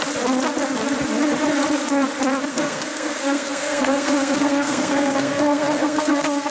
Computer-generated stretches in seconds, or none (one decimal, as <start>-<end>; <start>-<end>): 2.5-6.5